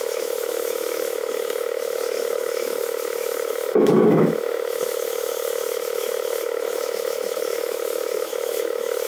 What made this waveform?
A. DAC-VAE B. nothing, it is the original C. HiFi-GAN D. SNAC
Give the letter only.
A